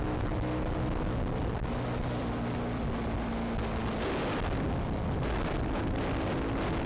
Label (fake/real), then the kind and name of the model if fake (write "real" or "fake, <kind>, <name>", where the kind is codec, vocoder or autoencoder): real